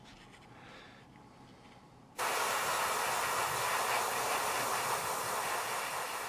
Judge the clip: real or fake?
real